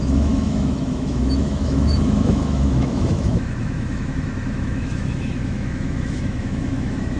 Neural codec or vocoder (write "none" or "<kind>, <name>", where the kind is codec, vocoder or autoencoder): autoencoder, DAC-VAE